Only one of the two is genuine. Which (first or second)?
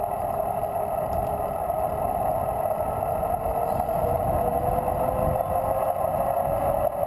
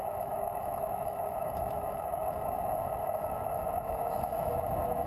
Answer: first